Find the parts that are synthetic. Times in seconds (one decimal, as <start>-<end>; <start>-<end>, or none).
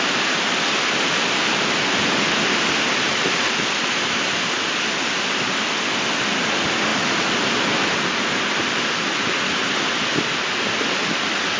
none